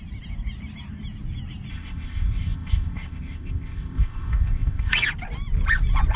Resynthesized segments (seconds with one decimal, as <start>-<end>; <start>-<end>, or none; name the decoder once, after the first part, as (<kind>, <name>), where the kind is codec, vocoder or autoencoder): 1.7-4.9 (codec, ZipCodec)